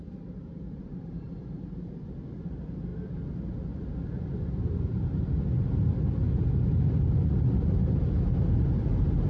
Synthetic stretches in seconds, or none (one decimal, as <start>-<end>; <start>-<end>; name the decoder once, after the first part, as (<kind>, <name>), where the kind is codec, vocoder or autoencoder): 0.0-2.9 (vocoder, BigVGAN v2); 7.8-9.3